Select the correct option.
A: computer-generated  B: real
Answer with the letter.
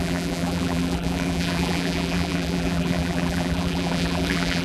A